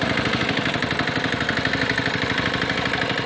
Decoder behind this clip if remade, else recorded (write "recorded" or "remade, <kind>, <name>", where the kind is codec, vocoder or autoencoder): recorded